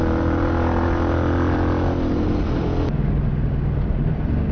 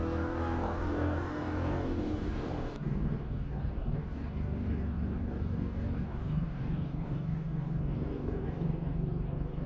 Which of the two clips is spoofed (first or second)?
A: second